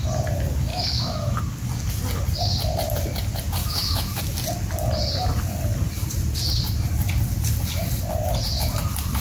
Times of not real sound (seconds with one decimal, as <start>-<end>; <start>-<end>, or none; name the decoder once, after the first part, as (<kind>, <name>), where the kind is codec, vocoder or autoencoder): 0.7-1.4 (autoencoder, DAC-VAE); 3.6-4.2